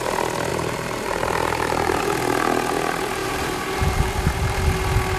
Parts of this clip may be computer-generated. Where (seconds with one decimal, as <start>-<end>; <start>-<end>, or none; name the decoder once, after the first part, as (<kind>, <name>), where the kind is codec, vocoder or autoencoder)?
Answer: 0.5-2.0 (vocoder, BigVGAN v2); 3.2-4.6